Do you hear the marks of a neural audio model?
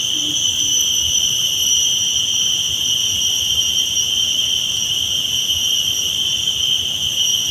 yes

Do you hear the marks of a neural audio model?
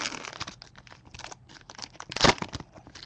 no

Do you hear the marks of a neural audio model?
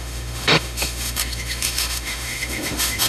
yes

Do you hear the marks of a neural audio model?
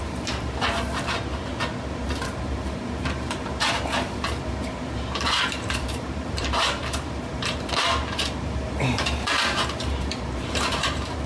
yes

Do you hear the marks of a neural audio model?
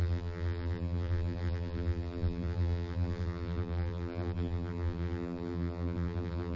yes